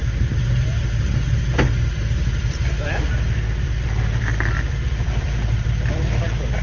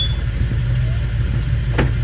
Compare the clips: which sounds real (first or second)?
second